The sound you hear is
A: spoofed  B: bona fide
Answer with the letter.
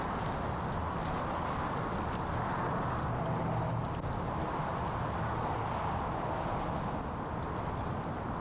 B